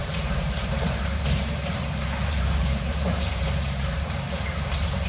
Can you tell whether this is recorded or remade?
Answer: remade